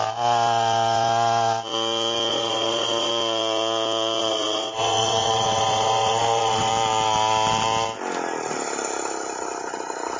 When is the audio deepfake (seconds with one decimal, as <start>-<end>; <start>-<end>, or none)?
2.3-3.1; 4.2-6.7